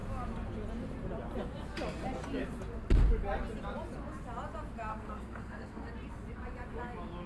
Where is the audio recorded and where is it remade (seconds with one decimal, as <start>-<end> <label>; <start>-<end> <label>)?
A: 0.0-4.9 recorded; 4.9-5.9 remade; 5.9-7.3 recorded